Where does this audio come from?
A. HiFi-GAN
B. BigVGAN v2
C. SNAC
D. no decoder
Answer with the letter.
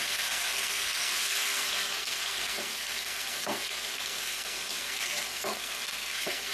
C